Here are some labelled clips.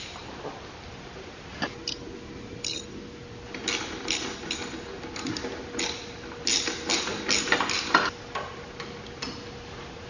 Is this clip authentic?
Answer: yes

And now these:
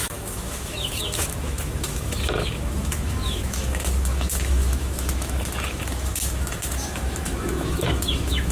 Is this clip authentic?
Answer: no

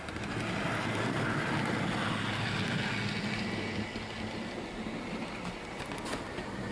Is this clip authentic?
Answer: yes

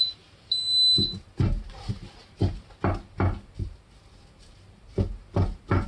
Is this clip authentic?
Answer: yes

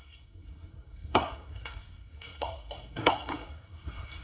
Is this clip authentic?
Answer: no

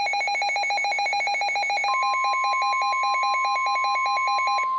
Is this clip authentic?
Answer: yes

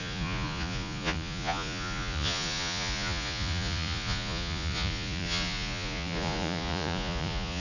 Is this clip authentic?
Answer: no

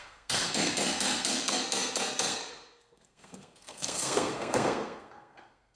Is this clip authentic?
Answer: no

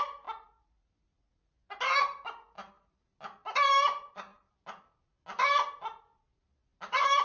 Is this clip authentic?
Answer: yes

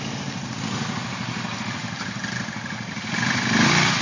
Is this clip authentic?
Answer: yes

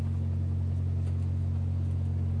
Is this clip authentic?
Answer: yes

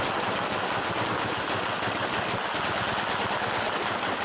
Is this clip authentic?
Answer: yes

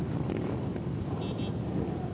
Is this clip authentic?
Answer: yes